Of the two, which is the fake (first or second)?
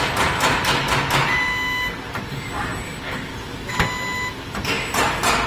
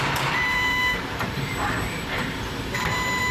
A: second